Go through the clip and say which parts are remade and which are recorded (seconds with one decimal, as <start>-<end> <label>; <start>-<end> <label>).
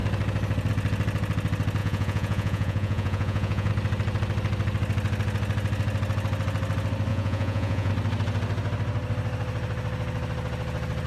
0.0-1.8 recorded; 1.8-3.7 remade; 3.7-7.1 recorded; 7.1-7.9 remade; 7.9-11.1 recorded